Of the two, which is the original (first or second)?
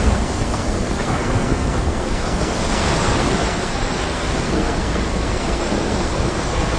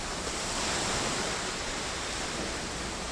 second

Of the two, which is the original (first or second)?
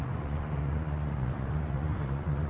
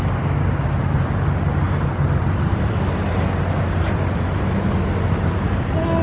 second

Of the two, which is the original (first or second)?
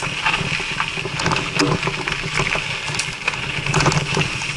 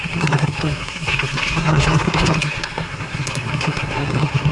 first